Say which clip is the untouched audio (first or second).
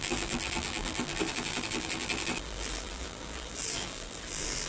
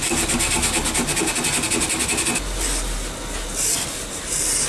second